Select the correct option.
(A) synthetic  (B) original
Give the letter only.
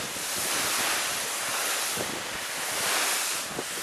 B